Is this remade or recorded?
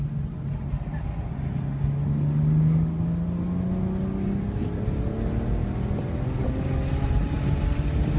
recorded